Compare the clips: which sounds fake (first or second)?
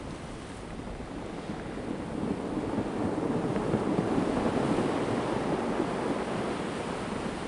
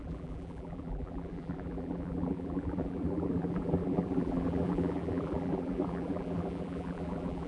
second